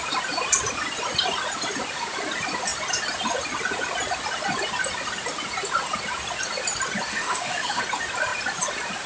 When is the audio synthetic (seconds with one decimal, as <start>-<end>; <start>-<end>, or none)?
7.1-7.8